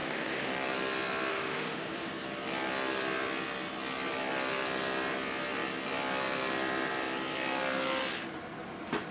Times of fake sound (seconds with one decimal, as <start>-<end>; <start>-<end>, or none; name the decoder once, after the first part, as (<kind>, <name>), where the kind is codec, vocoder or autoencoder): 0.0-0.5 (autoencoder, DAC-VAE); 1.3-2.1